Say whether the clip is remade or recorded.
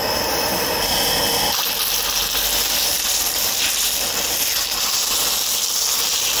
recorded